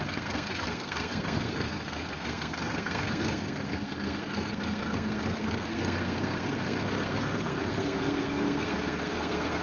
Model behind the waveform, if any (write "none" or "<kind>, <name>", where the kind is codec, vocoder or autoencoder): codec, SNAC